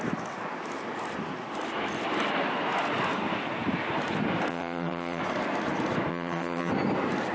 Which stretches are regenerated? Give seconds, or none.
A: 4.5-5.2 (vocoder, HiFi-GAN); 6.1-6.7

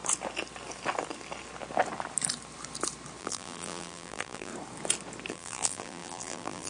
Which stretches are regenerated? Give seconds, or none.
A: 3.2-4.5 (vocoder, BigVGAN v2); 5.3-6.7

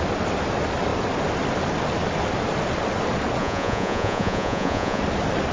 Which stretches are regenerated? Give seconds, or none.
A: 3.4-5.0 (vocoder, Vocos)